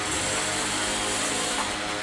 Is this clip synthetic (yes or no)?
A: no